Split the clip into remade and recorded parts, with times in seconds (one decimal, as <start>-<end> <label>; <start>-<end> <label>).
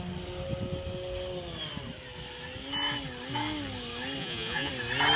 0.0-4.2 recorded; 4.2-4.7 remade; 4.7-5.2 recorded